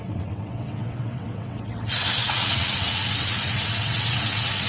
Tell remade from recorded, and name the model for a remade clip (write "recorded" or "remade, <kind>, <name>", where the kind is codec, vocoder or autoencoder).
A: remade, vocoder, WaveNeXt